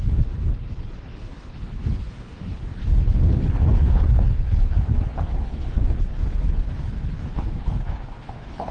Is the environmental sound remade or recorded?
remade